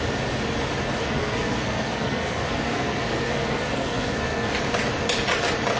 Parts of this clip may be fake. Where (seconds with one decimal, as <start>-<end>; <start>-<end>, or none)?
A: 1.0-4.5